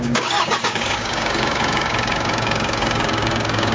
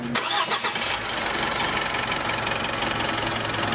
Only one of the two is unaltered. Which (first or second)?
second